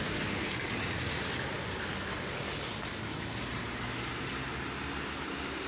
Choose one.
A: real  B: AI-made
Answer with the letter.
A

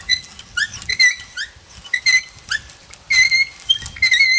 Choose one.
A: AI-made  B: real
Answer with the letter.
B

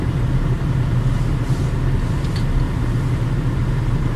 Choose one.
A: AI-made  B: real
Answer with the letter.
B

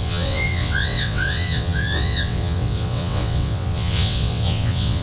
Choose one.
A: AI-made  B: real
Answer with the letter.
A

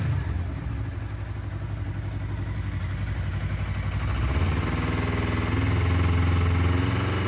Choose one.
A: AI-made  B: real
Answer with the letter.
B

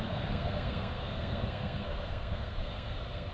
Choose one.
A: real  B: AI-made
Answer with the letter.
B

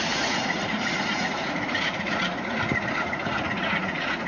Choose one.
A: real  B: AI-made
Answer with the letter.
B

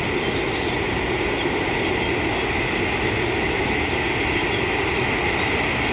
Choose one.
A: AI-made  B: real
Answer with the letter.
B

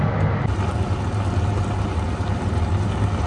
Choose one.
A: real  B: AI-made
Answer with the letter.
A